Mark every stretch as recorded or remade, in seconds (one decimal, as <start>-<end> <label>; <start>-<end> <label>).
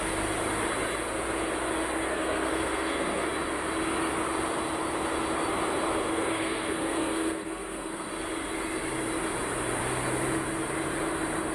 0.0-2.1 recorded; 2.1-3.2 remade; 3.2-6.1 recorded; 6.1-8.1 remade; 8.1-11.5 recorded